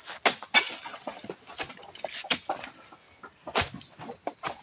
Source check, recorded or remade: recorded